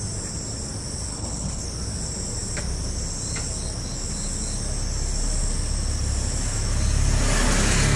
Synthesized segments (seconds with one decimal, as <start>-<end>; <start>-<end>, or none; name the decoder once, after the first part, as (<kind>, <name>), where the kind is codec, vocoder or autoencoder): 1.1-1.6 (codec, HILCodec)